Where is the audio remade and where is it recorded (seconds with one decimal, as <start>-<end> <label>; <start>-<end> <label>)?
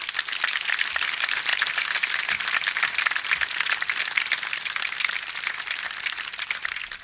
0.0-7.0 recorded